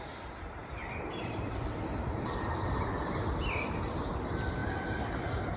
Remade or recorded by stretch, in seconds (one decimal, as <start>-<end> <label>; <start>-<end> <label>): 0.0-0.6 recorded; 0.6-4.0 remade; 4.0-4.6 recorded; 4.6-5.6 remade